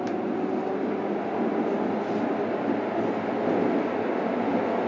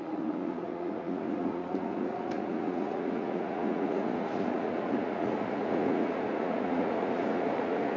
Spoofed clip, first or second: second